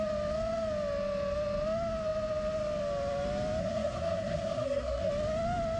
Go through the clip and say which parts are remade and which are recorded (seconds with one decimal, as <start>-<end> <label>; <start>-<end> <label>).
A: 0.0-3.6 recorded; 3.6-5.1 remade; 5.1-5.8 recorded